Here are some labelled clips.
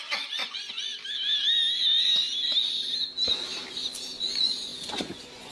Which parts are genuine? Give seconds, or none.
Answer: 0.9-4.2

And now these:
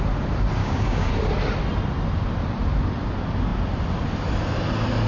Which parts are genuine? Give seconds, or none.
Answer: 0.0-0.6; 1.1-5.1

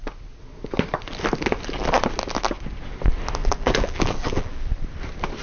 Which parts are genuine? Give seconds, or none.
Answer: 0.0-3.4; 4.7-5.4